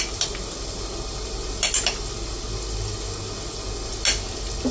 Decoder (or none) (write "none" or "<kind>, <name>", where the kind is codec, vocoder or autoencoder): none